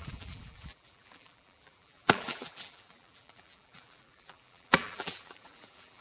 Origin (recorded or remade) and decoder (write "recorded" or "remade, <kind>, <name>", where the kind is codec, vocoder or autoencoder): remade, vocoder, BigVGAN v2